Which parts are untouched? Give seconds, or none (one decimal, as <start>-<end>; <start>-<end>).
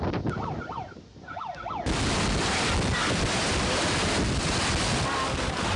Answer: 0.0-5.8